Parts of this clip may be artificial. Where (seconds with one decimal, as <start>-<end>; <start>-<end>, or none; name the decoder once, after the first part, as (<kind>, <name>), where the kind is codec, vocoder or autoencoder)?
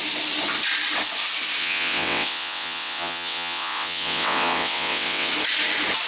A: 1.6-5.3 (vocoder, WaveNeXt)